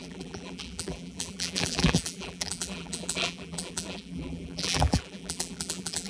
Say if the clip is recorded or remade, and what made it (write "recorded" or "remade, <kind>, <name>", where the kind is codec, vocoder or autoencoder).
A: remade, vocoder, BigVGAN v2